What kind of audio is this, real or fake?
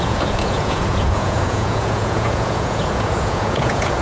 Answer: fake